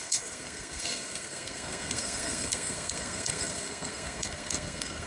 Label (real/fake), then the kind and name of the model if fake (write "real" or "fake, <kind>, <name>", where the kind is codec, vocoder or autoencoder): fake, codec, SNAC